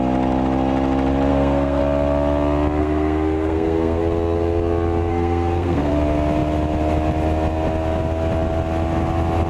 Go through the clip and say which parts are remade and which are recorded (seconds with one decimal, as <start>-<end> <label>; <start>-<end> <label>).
0.0-1.3 recorded; 1.3-1.8 remade; 1.8-2.8 recorded; 2.8-4.0 remade; 4.0-5.1 recorded; 5.1-5.9 remade; 5.9-9.5 recorded